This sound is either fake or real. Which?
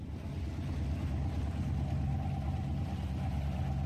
real